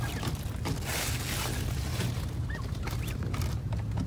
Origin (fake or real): real